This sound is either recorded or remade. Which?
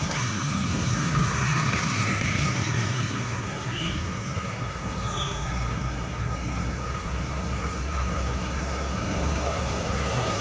remade